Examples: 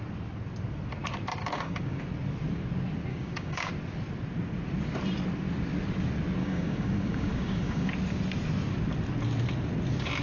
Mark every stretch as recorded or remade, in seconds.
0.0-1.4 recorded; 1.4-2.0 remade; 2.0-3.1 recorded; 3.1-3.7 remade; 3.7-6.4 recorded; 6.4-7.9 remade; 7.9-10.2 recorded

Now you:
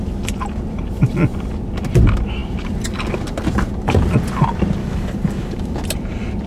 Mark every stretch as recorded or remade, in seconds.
0.0-4.8 recorded; 4.8-5.8 remade; 5.8-6.5 recorded